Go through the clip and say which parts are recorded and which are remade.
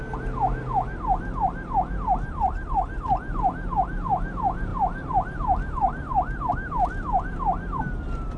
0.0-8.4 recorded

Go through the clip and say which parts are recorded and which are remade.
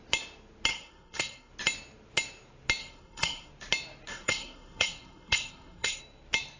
0.0-0.7 recorded; 0.7-1.5 remade; 1.5-2.8 recorded; 2.8-3.5 remade; 3.5-4.1 recorded; 4.1-6.0 remade; 6.0-6.6 recorded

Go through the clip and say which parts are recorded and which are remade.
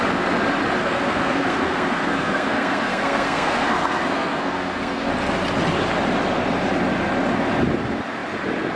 0.0-0.8 recorded; 0.8-5.1 remade; 5.1-8.8 recorded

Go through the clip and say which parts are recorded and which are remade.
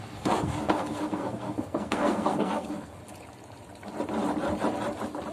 0.0-3.0 remade; 3.0-5.3 recorded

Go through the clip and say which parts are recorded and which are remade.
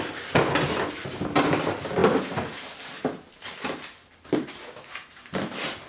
0.0-5.9 recorded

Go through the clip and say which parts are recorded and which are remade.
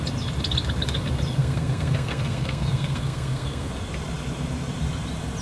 0.0-1.4 recorded; 1.4-3.7 remade; 3.7-5.4 recorded